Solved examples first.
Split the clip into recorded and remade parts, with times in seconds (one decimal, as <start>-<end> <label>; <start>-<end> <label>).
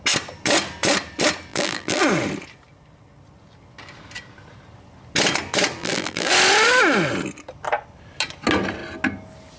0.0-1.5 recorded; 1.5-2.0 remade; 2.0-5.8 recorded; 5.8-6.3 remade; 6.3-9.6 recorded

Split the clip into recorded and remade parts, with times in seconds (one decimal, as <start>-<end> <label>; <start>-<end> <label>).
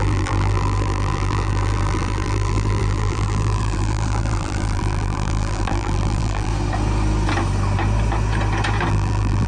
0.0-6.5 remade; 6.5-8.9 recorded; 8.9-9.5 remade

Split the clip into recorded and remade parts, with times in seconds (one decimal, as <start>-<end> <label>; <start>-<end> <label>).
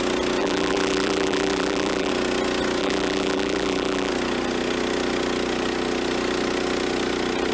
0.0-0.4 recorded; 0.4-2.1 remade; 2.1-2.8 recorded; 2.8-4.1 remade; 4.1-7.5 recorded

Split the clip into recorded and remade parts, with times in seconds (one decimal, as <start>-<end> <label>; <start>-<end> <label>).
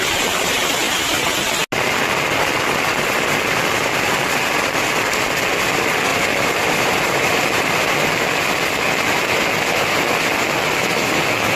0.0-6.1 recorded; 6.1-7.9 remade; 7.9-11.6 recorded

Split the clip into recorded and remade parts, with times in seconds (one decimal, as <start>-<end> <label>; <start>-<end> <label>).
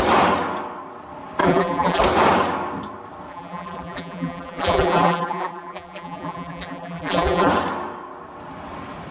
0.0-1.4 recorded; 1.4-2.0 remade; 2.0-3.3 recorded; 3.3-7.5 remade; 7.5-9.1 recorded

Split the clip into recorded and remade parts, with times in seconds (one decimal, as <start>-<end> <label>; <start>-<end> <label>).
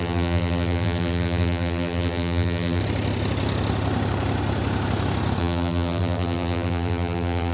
0.0-2.8 remade; 2.8-5.4 recorded; 5.4-7.5 remade